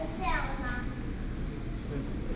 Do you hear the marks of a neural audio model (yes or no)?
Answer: no